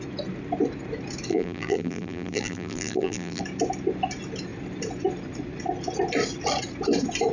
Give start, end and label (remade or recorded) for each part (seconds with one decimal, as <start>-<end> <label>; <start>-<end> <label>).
0.0-1.3 recorded; 1.3-3.4 remade; 3.4-7.3 recorded